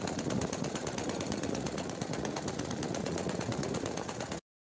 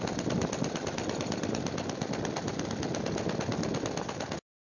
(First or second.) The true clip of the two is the second